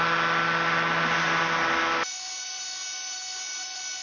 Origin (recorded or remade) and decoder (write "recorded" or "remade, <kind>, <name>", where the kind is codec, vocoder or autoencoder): recorded